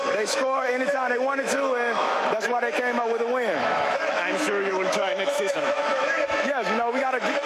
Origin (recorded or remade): remade